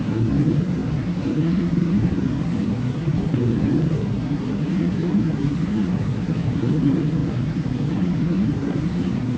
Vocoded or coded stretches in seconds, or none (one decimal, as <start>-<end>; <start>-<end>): 0.0-9.4